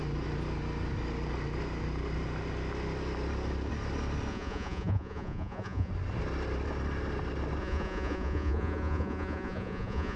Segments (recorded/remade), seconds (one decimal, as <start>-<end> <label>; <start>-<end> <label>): 0.0-4.3 recorded; 4.3-5.9 remade; 5.9-7.6 recorded; 7.6-10.2 remade